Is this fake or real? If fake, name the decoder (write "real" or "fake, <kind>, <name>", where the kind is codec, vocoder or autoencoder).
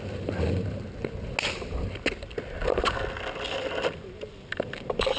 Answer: real